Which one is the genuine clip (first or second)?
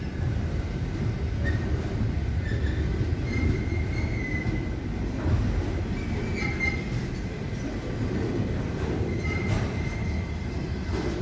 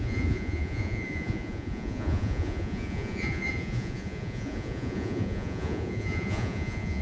first